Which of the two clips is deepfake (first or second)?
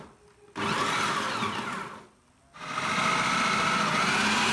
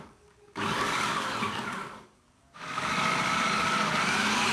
second